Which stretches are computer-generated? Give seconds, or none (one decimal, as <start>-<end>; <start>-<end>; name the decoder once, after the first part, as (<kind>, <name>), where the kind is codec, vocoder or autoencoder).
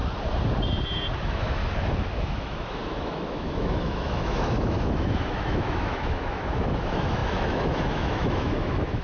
1.2-1.6 (autoencoder, DAC-VAE); 2.1-9.0